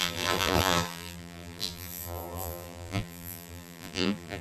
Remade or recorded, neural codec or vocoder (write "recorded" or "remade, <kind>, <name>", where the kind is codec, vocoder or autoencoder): remade, vocoder, BigVGAN v2